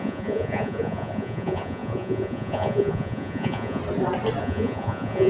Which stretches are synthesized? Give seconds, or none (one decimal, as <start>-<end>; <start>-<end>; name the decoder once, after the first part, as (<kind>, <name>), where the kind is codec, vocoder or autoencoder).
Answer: 0.0-3.8 (vocoder, Vocos); 4.4-5.3